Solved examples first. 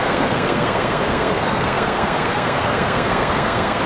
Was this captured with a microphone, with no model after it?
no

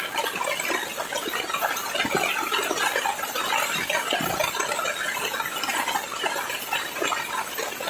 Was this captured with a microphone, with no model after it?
yes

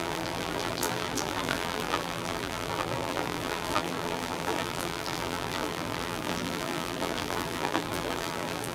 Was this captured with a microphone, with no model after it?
no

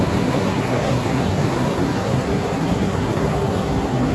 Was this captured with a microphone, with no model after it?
no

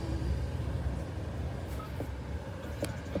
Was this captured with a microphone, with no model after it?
yes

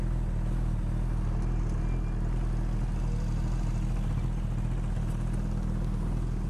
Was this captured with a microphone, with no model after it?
yes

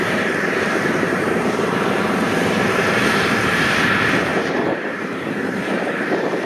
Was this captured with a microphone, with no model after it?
no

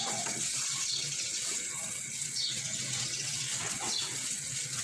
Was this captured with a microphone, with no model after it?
no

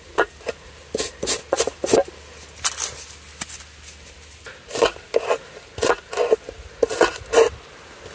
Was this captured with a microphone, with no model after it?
yes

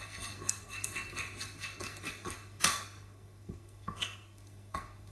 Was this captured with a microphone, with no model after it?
no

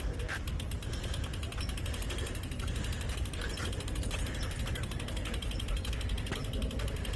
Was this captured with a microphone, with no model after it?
yes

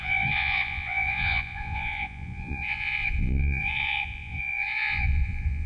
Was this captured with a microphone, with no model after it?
no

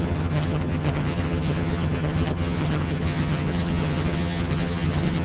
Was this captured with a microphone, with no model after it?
no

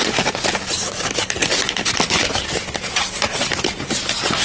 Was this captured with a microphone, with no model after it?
yes